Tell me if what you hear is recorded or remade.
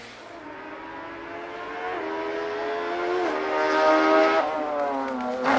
recorded